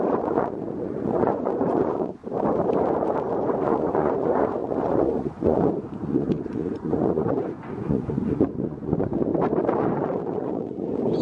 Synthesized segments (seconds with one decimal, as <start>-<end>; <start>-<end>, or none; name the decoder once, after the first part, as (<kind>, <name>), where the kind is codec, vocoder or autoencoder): 0.0-2.2 (vocoder, Vocos); 3.6-9.3; 9.8-11.2